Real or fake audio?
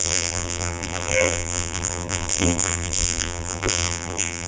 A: fake